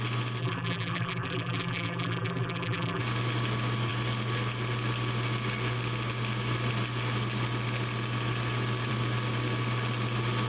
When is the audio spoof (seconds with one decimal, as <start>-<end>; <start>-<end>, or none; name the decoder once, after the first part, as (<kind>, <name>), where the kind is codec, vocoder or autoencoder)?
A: 0.4-3.0 (vocoder, BigVGAN v2)